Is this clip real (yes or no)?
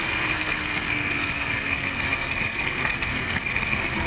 no